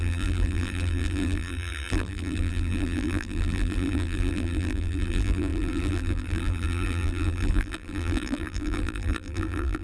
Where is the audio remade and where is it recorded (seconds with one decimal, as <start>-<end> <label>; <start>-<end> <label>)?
0.0-9.8 remade

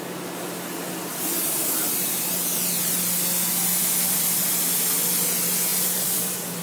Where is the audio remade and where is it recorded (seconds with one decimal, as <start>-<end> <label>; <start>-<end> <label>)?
0.0-1.1 recorded; 1.1-2.3 remade; 2.3-3.8 recorded; 3.8-4.4 remade; 4.4-5.7 recorded; 5.7-6.6 remade

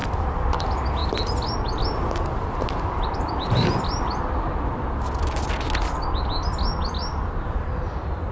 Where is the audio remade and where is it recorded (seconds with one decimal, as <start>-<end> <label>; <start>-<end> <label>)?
0.0-0.6 remade; 0.6-8.3 recorded

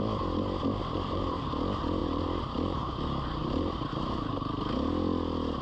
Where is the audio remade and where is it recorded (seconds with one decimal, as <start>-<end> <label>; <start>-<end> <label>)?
0.0-0.8 recorded; 0.8-1.4 remade; 1.4-2.0 recorded; 2.0-3.0 remade; 3.0-3.4 recorded; 3.4-4.3 remade; 4.3-5.6 recorded